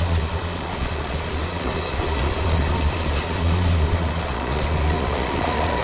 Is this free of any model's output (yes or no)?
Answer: no